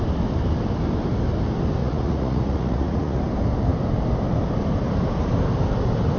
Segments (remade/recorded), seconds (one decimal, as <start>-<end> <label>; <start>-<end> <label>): 0.0-1.8 recorded; 1.8-3.2 remade; 3.2-6.2 recorded